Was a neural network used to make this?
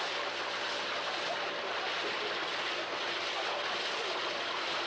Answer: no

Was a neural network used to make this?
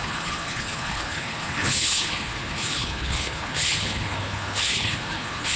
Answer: yes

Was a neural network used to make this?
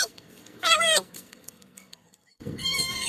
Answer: yes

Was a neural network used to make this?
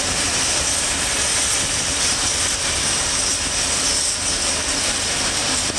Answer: no